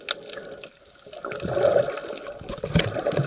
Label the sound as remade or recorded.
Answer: recorded